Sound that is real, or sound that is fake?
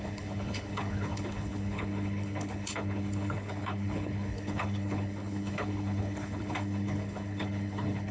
fake